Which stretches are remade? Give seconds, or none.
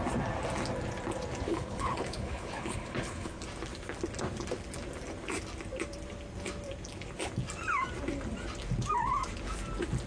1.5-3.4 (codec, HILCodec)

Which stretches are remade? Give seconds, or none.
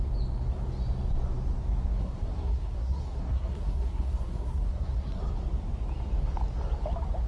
2.0-5.2 (codec, SNAC)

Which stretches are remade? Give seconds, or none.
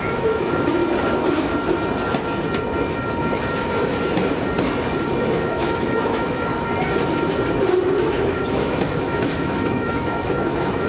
0.0-0.8 (autoencoder, DAC-VAE); 5.0-6.5; 7.8-10.9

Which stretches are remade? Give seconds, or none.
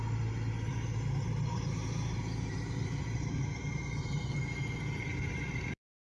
0.7-4.4 (vocoder, BigVGAN v2); 5.1-6.2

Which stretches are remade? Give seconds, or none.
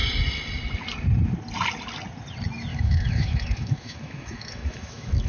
2.7-5.3 (autoencoder, DAC-VAE)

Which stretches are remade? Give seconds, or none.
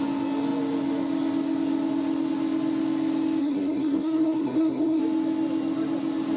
3.4-5.0 (codec, SNAC)